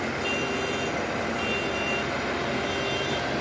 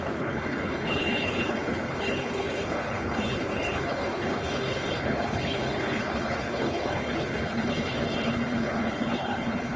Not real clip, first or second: second